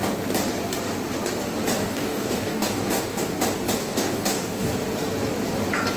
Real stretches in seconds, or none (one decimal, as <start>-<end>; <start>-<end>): 0.0-1.8; 3.4-3.8; 4.7-6.0